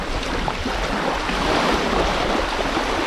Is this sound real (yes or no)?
yes